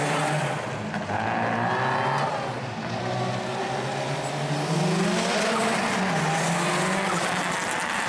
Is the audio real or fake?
real